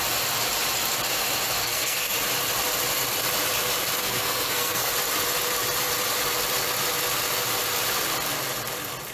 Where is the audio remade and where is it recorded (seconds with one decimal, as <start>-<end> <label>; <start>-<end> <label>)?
0.0-1.6 recorded; 1.6-2.2 remade; 2.2-4.0 recorded; 4.0-4.9 remade; 4.9-9.1 recorded